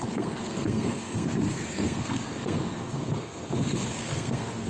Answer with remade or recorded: remade